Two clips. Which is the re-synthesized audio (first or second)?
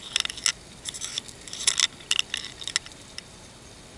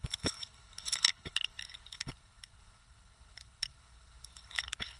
second